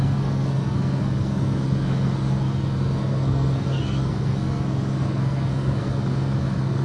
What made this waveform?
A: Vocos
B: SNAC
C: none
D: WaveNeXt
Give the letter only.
B